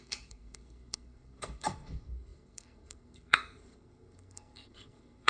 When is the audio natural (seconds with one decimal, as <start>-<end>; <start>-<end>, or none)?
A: none